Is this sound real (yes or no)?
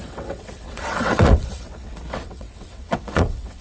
no